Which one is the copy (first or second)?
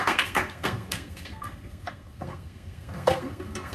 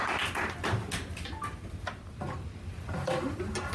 first